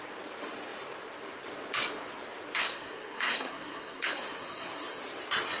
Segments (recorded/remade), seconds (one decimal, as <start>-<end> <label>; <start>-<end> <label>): 0.0-2.6 recorded; 2.6-5.0 remade; 5.0-5.6 recorded